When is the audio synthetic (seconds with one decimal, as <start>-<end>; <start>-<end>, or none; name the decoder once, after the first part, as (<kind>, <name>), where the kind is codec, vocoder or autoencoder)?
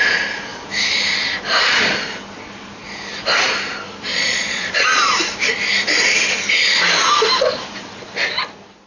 4.1-5.0 (vocoder, Vocos)